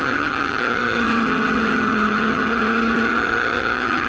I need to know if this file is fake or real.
fake